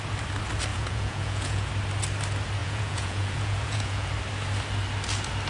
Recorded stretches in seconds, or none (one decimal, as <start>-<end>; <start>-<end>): 0.0-0.7; 1.7-2.6; 4.1-5.5